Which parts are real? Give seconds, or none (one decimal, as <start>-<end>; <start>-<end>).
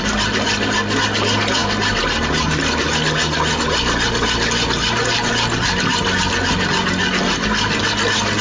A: 0.0-8.4